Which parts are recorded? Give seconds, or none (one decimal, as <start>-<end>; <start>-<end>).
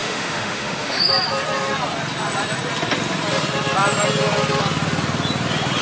1.0-5.8